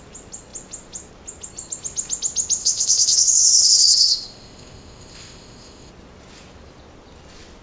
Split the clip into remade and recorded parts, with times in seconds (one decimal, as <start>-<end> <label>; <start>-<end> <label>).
0.0-2.6 recorded; 2.6-5.9 remade; 5.9-7.6 recorded